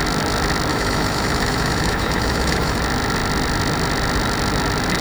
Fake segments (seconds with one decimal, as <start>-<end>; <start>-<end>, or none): 0.7-2.8